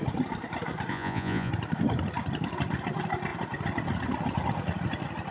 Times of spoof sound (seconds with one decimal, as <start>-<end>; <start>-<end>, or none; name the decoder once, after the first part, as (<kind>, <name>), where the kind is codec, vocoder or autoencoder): 0.9-1.5 (vocoder, Vocos)